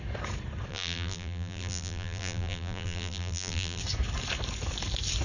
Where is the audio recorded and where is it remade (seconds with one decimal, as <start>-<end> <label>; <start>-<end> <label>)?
0.0-0.7 recorded; 0.7-3.8 remade; 3.8-5.2 recorded